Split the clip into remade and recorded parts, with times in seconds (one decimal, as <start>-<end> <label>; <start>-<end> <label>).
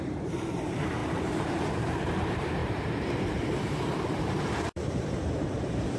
0.0-6.0 remade